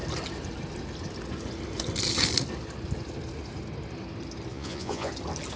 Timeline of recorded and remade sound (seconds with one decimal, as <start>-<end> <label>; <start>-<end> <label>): 0.0-4.5 recorded; 4.5-5.1 remade; 5.1-5.6 recorded